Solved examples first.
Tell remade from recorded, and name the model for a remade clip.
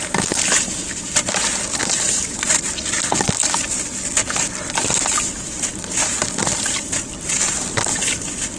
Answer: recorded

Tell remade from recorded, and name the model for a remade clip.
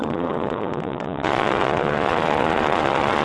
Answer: remade, vocoder, Vocos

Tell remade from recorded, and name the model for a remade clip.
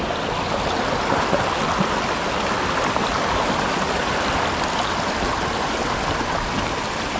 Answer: recorded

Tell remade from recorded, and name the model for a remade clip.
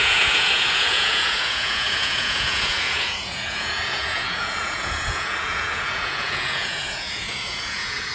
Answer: remade, vocoder, Vocos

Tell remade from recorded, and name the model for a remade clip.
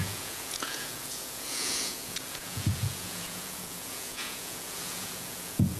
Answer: remade, vocoder, Vocos